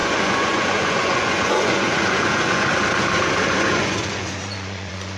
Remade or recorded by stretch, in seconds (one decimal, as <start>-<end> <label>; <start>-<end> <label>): 0.0-2.7 remade; 2.7-3.4 recorded; 3.4-5.2 remade